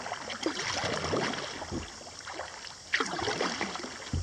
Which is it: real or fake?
real